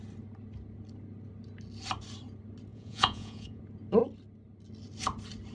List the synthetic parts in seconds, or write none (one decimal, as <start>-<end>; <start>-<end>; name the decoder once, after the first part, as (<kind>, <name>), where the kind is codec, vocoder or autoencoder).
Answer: 2.7-3.6 (vocoder, Vocos)